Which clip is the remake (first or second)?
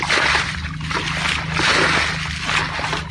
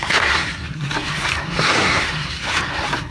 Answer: second